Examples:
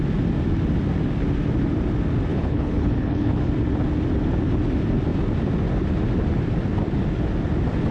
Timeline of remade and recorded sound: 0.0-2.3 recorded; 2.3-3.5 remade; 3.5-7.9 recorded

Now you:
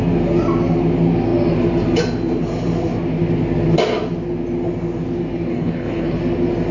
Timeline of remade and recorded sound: 0.0-5.5 recorded; 5.5-6.2 remade; 6.2-6.7 recorded

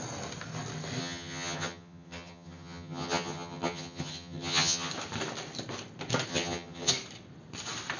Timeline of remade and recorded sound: 0.0-1.0 recorded; 1.0-4.9 remade; 4.9-6.3 recorded; 6.3-6.9 remade; 6.9-8.0 recorded

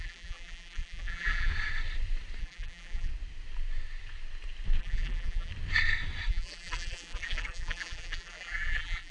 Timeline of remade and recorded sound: 0.0-1.5 remade; 1.5-2.4 recorded; 2.4-3.1 remade; 3.1-4.8 recorded; 4.8-5.5 remade; 5.5-6.3 recorded; 6.3-9.1 remade